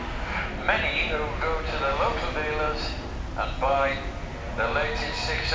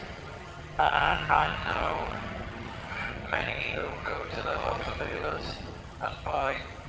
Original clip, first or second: first